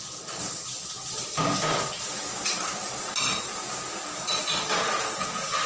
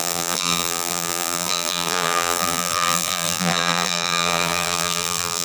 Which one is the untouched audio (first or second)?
first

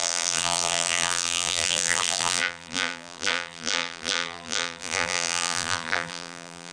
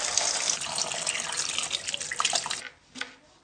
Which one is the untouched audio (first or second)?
second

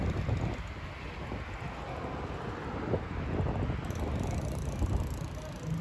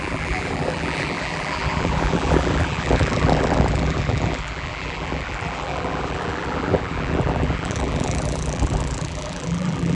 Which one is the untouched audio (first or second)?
first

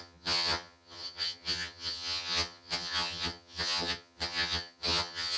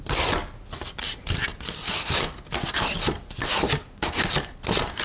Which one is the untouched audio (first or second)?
second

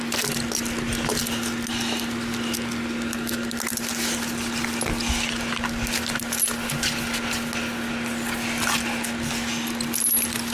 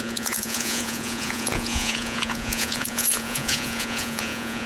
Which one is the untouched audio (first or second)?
first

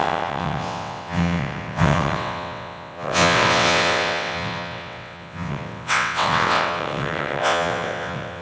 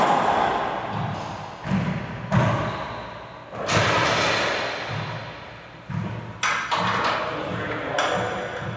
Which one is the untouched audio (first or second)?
second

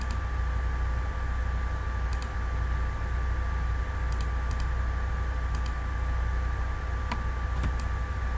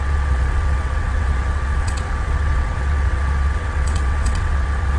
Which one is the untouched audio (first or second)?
first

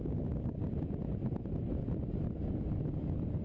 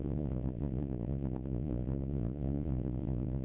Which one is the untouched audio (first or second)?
first